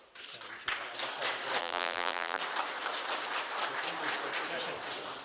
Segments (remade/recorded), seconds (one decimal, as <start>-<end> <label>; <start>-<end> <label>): 0.0-1.6 recorded; 1.6-2.4 remade; 2.4-5.2 recorded